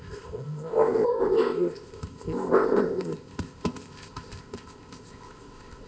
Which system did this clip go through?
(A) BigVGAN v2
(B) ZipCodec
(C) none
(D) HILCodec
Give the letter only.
B